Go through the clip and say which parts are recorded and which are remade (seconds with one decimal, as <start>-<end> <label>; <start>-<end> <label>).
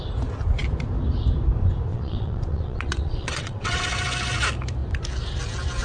0.0-1.9 recorded; 1.9-3.8 remade; 3.8-5.8 recorded